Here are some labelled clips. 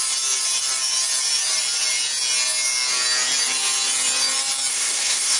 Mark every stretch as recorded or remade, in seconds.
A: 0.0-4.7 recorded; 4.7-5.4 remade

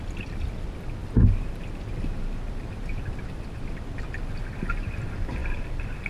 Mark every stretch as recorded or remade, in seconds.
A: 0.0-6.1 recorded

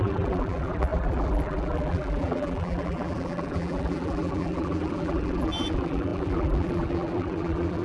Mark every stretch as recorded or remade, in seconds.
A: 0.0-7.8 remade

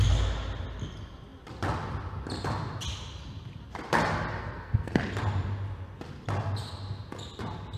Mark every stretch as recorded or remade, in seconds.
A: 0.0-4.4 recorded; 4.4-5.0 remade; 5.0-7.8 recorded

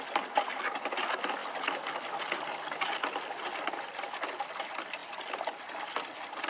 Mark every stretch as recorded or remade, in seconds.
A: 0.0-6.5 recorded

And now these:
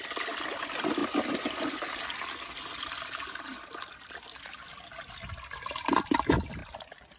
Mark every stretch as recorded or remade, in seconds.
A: 0.0-7.2 recorded

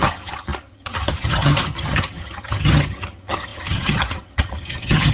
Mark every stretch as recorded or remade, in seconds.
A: 0.0-5.1 remade

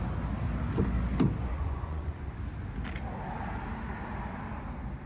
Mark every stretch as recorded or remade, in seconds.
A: 0.0-1.4 recorded; 1.4-2.3 remade; 2.3-5.1 recorded